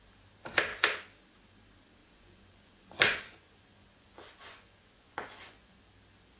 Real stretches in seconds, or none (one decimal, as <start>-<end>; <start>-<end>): 0.0-2.0; 5.8-6.4